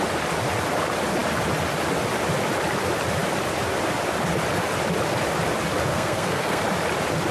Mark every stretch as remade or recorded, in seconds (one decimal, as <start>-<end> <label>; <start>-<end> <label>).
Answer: 0.0-5.9 recorded; 5.9-6.6 remade; 6.6-7.3 recorded